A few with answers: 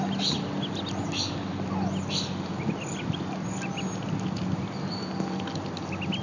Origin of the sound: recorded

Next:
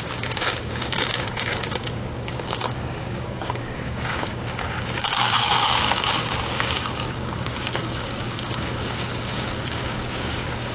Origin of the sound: remade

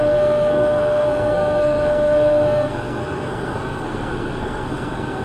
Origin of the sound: remade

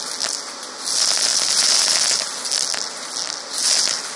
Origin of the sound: recorded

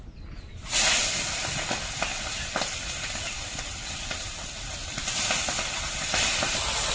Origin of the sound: recorded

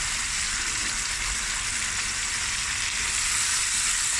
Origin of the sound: recorded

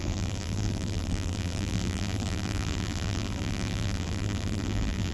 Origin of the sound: remade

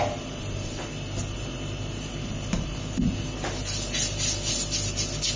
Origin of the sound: recorded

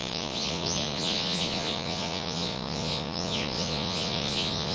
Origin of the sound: remade